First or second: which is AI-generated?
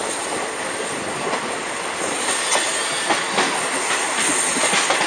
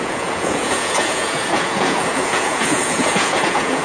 second